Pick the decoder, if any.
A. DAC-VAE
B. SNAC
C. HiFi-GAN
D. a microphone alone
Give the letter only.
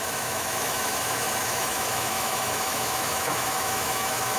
A